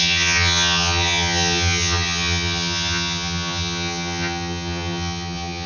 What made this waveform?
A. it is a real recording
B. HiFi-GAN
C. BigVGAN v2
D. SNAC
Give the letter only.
B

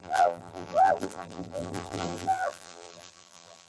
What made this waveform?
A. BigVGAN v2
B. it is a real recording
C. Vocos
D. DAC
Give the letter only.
A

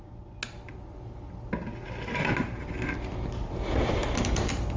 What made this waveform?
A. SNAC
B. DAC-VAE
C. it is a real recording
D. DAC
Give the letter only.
C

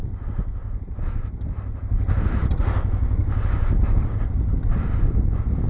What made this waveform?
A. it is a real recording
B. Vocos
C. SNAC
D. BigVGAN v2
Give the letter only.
A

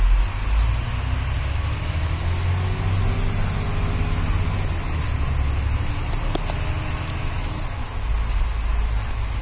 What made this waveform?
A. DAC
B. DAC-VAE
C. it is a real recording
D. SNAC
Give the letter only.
C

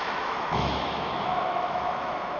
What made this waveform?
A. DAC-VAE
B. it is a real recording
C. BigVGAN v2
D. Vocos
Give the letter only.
A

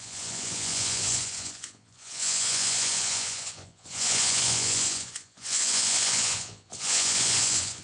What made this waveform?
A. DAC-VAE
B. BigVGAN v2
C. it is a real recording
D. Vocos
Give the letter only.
D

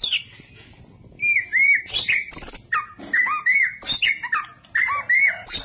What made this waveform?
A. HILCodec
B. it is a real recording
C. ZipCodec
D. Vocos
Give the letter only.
B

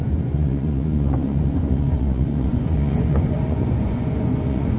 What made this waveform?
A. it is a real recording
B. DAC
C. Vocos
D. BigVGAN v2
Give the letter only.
C